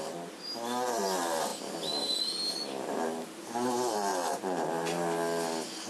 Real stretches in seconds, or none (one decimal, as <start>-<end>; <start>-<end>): 0.0-5.9